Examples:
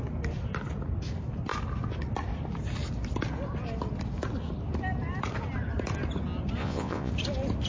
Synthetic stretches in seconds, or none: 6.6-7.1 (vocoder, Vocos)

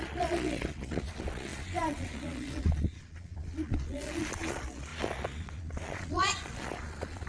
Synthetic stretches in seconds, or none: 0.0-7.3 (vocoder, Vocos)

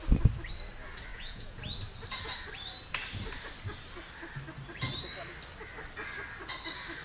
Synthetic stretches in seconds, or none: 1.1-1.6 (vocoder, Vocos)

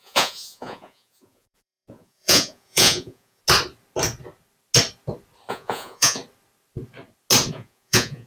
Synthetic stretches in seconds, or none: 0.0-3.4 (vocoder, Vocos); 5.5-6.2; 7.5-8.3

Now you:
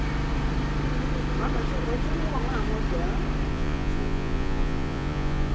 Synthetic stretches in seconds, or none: 3.5-5.5 (vocoder, Vocos)